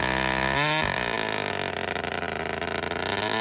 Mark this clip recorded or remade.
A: recorded